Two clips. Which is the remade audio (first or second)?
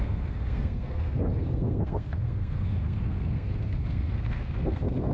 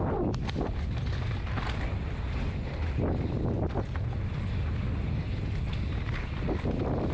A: first